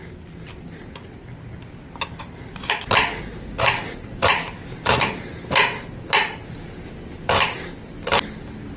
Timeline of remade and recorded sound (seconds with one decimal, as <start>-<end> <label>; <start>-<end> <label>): 0.0-8.8 recorded